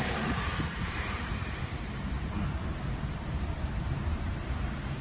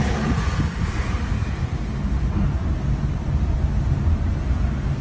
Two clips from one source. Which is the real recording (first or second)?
second